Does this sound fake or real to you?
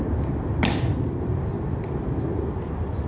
fake